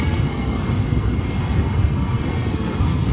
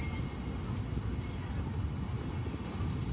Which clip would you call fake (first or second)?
first